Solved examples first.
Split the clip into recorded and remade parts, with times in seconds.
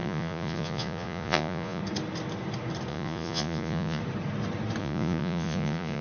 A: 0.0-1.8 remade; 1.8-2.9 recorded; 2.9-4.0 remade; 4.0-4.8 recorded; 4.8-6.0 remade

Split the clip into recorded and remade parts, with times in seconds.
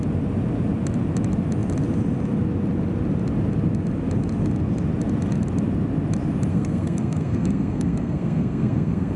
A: 0.0-6.5 recorded; 6.5-9.2 remade